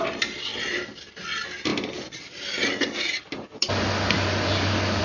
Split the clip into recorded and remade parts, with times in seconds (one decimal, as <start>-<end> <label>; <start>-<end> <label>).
0.0-1.7 recorded; 1.7-5.0 remade